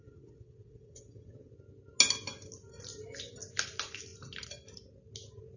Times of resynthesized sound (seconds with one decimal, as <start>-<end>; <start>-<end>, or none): 0.0-1.5